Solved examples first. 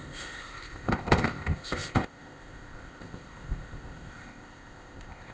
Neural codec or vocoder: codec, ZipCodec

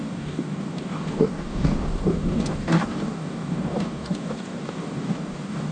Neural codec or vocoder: codec, DAC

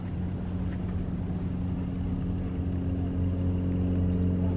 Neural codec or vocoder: none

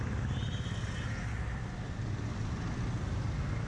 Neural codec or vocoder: none